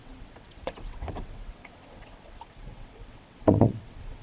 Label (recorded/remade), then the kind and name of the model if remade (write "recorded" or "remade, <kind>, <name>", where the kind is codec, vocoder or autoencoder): remade, vocoder, WaveNeXt